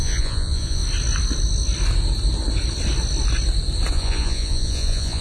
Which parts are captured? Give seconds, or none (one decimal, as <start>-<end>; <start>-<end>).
0.8-3.9